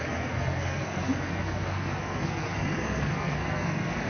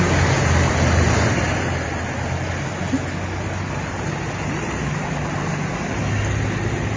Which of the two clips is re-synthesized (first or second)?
first